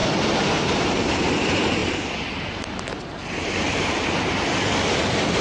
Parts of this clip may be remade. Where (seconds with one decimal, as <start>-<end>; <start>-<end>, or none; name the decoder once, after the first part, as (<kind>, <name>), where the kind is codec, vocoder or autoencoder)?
none